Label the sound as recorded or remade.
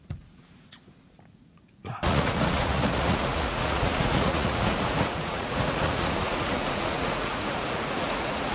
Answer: remade